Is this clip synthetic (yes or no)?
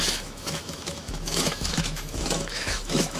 yes